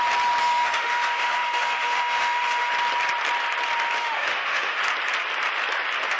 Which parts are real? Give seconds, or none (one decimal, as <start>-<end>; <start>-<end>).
0.0-0.4; 2.7-4.0; 4.8-6.2